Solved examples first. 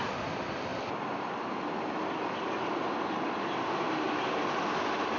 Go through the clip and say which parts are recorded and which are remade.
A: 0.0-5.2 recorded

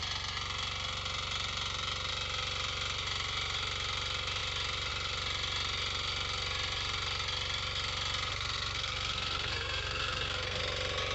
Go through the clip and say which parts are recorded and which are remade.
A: 0.0-8.3 recorded; 8.3-10.6 remade; 10.6-11.1 recorded

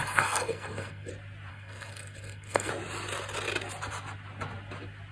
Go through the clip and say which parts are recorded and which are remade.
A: 0.0-1.1 remade; 1.1-1.5 recorded; 1.5-2.7 remade; 2.7-5.1 recorded

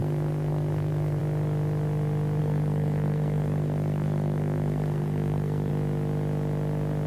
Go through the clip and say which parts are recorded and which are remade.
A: 0.0-1.2 remade; 1.2-2.4 recorded; 2.4-5.7 remade; 5.7-7.1 recorded

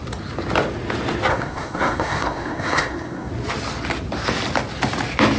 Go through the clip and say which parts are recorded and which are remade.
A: 0.0-1.3 recorded; 1.3-3.3 remade; 3.3-5.4 recorded

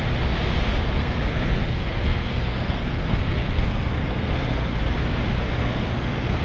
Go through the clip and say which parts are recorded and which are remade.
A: 0.0-1.0 recorded; 1.0-4.8 remade; 4.8-5.6 recorded; 5.6-6.4 remade